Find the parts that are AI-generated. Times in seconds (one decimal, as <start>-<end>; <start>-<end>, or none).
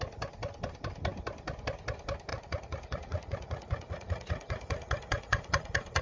2.3-6.0